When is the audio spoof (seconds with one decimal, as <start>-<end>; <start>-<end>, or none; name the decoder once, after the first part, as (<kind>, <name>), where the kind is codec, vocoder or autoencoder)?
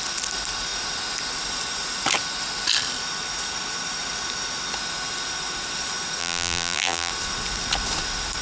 6.2-7.1 (vocoder, BigVGAN v2)